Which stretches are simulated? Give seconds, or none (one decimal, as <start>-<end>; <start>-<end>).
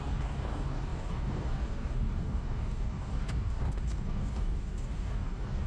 0.0-5.7